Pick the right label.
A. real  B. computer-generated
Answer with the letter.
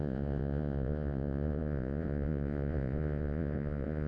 B